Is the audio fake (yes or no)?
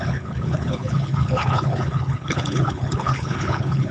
yes